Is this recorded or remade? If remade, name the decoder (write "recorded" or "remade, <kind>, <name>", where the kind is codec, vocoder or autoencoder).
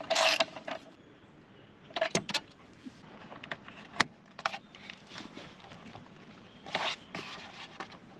remade, vocoder, BigVGAN v2